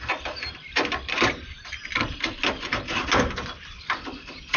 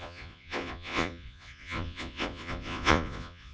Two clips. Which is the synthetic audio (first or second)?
second